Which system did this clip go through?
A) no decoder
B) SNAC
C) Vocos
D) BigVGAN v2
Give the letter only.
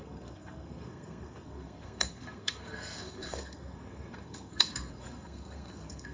B